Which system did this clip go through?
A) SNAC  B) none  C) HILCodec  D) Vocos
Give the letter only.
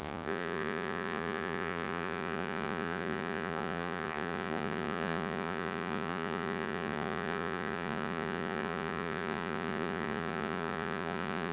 D